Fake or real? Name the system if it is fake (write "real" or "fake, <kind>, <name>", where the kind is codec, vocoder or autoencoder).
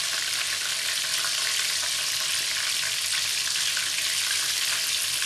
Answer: real